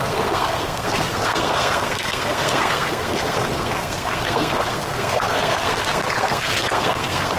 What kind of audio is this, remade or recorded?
remade